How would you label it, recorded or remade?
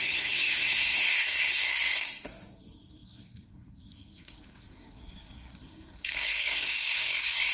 remade